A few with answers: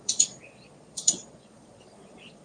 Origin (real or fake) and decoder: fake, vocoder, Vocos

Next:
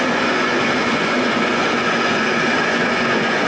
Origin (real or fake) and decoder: fake, vocoder, Vocos